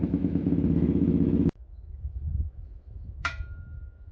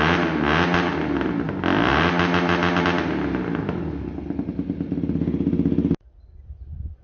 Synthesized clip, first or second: first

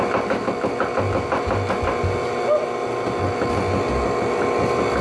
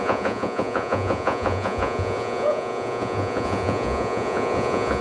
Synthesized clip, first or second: second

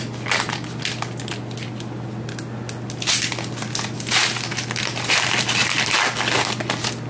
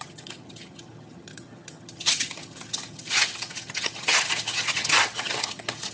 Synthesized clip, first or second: second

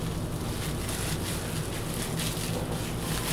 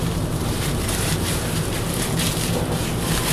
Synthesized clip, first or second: second